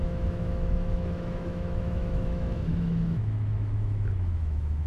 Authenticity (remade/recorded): remade